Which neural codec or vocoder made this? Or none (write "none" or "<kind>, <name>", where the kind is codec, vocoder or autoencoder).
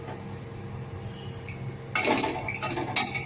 none